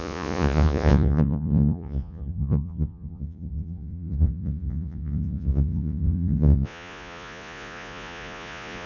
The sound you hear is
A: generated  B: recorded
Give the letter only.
A